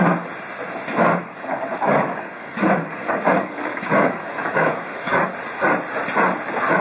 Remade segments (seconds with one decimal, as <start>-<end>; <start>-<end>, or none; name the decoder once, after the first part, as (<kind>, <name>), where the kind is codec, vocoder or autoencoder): 1.2-5.3 (codec, DAC)